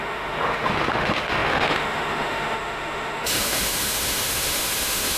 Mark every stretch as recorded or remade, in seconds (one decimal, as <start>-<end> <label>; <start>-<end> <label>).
0.0-5.2 remade